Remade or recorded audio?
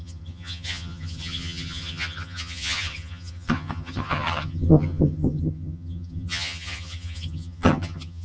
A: remade